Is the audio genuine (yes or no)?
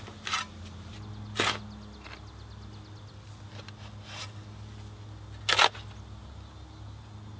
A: yes